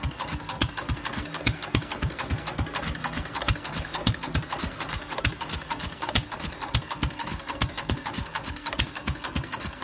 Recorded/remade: remade